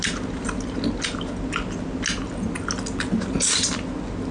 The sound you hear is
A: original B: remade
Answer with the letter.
A